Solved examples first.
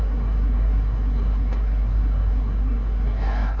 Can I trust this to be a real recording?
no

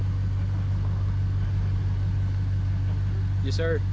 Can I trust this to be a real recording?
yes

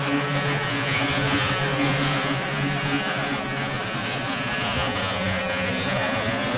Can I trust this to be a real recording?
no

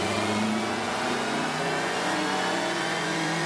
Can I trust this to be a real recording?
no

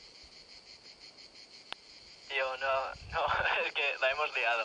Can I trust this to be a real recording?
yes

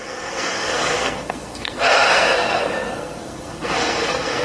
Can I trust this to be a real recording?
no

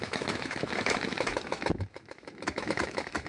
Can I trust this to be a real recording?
no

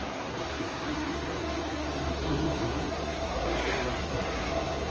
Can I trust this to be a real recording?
no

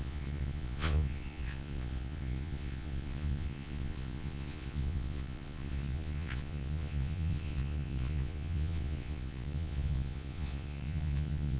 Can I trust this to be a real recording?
no